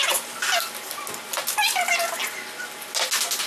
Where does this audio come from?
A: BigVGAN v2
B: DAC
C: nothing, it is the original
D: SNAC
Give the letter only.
C